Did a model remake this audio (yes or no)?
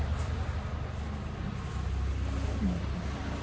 no